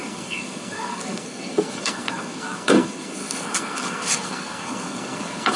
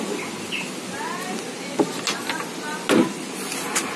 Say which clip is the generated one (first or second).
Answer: first